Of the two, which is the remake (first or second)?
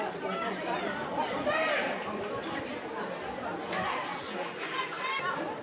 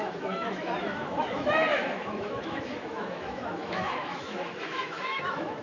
second